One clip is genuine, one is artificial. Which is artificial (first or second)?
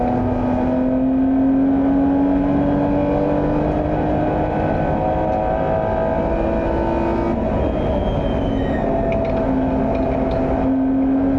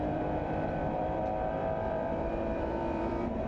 second